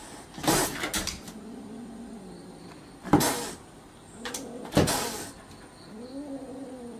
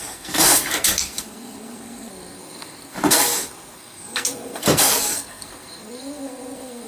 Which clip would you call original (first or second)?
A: first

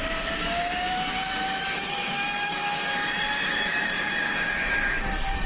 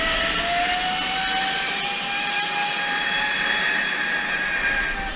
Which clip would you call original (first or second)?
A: second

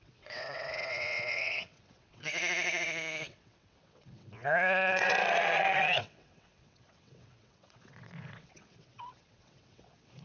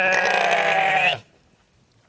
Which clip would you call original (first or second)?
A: second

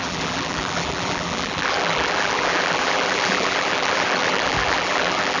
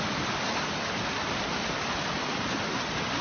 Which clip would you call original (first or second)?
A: second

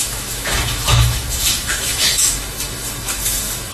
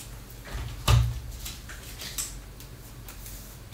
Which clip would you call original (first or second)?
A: second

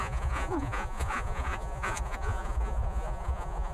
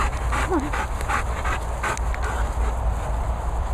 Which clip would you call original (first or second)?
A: second